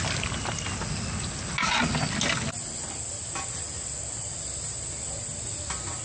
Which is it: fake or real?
real